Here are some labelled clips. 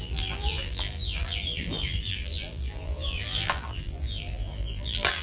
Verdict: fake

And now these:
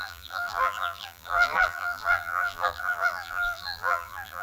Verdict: fake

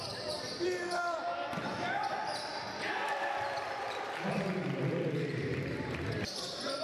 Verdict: fake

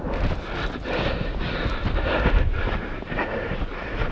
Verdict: real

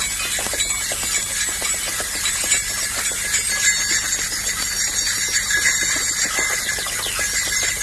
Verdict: real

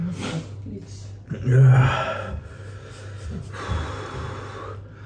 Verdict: real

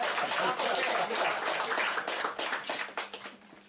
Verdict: real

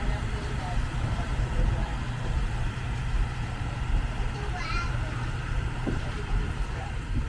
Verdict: fake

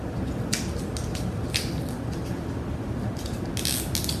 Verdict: real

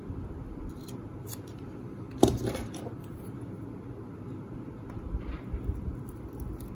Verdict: fake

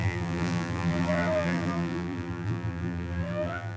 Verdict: fake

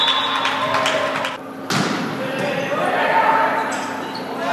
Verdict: real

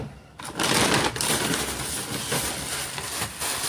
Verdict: fake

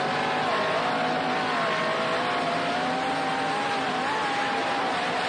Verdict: real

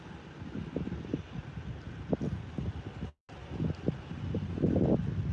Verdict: real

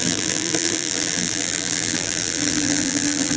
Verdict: fake